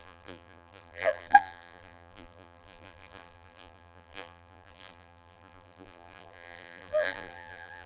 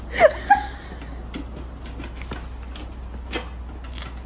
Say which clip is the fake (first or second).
first